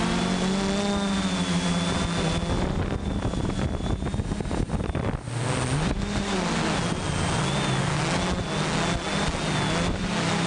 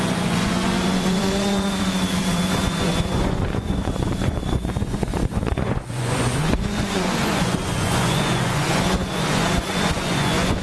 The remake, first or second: second